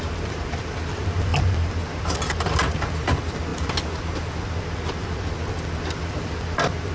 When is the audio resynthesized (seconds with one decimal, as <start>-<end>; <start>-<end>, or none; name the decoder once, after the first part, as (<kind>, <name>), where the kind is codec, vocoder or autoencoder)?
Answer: none